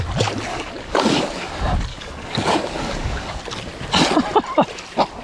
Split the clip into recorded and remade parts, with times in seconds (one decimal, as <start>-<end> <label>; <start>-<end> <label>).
0.0-0.5 recorded; 0.5-1.5 remade; 1.5-1.9 recorded; 1.9-3.4 remade; 3.4-5.2 recorded